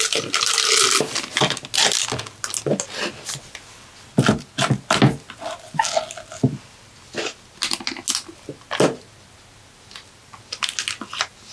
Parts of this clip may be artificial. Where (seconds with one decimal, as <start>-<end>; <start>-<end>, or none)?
none